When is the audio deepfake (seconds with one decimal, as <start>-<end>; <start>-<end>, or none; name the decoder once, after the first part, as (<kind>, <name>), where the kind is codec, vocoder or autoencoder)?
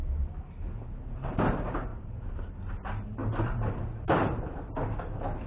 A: 0.0-0.7 (vocoder, BigVGAN v2); 1.9-2.5; 3.2-3.8